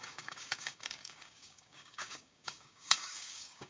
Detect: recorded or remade remade